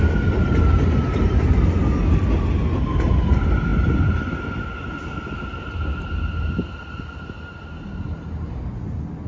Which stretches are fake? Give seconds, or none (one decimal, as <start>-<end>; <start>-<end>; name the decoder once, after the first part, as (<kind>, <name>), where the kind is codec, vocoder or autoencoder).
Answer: none